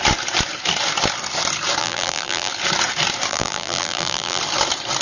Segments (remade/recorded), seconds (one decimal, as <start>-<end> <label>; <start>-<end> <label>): 0.0-1.8 recorded; 1.8-2.5 remade; 2.5-3.3 recorded; 3.3-4.4 remade; 4.4-5.0 recorded